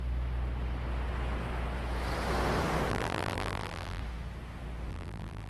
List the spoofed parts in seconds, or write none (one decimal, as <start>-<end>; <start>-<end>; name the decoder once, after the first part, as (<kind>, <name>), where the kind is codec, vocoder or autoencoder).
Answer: 2.9-4.0 (vocoder, BigVGAN v2); 4.9-5.5